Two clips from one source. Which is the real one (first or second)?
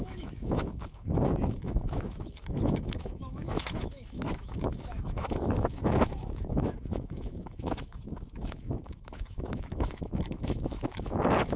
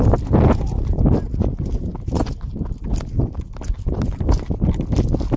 second